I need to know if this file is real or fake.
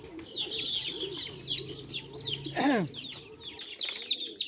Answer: real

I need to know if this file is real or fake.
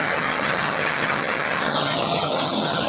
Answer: fake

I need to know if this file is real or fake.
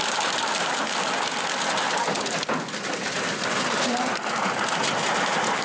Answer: real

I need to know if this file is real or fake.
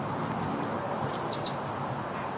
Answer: real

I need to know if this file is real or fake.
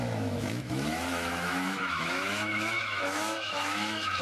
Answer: fake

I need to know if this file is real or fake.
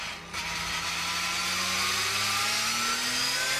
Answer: real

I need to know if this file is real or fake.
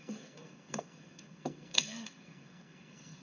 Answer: fake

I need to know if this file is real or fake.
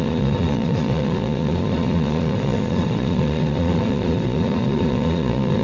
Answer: fake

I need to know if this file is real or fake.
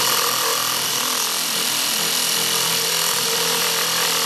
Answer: real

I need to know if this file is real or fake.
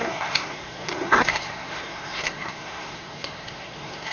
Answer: fake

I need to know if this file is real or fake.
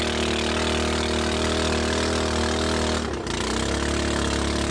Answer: real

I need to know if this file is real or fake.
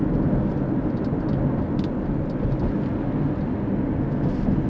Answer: real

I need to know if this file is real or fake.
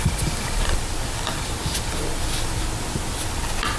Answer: real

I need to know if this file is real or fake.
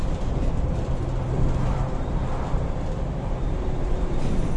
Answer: real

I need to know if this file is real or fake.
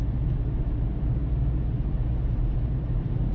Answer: real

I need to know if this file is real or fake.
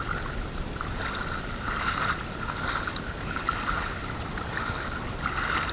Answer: real